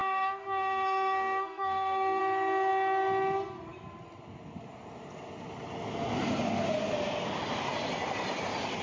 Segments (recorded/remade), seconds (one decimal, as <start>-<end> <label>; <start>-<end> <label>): 0.0-2.2 remade; 2.2-8.8 recorded